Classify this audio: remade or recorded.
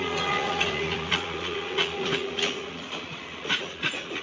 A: remade